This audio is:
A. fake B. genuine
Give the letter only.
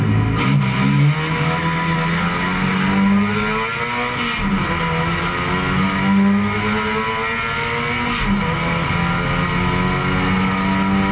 B